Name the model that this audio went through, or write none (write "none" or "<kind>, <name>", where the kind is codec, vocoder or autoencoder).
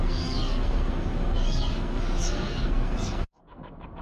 codec, SNAC